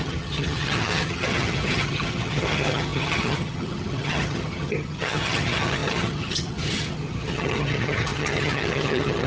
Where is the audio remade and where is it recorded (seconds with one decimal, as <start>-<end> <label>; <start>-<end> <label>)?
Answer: 0.0-9.3 remade

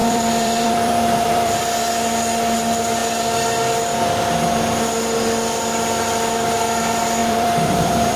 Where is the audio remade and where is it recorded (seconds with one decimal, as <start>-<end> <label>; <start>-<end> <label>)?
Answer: 0.0-1.6 remade; 1.6-7.2 recorded; 7.2-8.2 remade

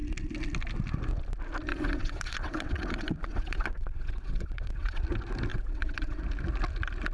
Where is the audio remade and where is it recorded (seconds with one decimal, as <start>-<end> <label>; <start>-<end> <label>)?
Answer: 0.0-1.7 recorded; 1.7-5.0 remade; 5.0-5.5 recorded; 5.5-6.2 remade; 6.2-7.1 recorded

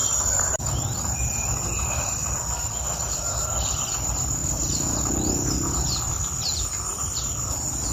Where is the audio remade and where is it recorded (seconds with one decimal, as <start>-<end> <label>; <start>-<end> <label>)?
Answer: 0.0-0.6 remade; 0.6-4.4 recorded; 4.4-5.1 remade; 5.1-7.9 recorded

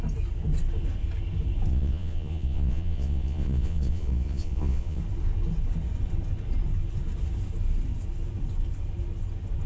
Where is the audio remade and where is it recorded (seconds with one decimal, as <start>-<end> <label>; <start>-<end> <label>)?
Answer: 0.0-1.7 recorded; 1.7-5.0 remade; 5.0-9.7 recorded

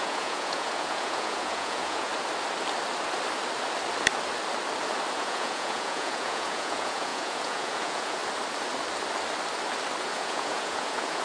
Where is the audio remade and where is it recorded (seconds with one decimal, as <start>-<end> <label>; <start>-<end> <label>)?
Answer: 0.0-2.1 remade; 2.1-5.1 recorded; 5.1-8.2 remade; 8.2-10.0 recorded; 10.0-11.2 remade

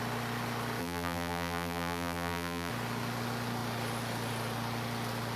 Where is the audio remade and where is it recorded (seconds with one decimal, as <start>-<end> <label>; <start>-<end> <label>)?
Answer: 0.0-0.8 recorded; 0.8-2.7 remade; 2.7-5.4 recorded

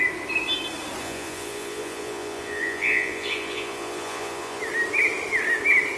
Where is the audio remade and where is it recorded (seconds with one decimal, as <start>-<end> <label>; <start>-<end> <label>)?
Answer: 0.0-1.0 recorded; 1.0-4.6 remade; 4.6-6.0 recorded